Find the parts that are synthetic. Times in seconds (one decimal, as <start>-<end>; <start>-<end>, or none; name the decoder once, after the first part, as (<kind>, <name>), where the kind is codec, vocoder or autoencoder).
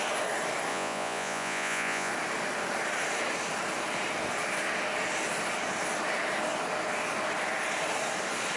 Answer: 0.7-2.1 (vocoder, Vocos)